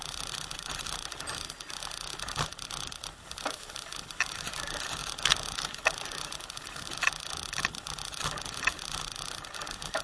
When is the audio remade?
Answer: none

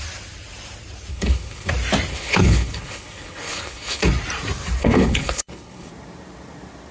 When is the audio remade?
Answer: 1.1-1.7 (codec, HILCodec); 2.1-4.1; 4.8-5.9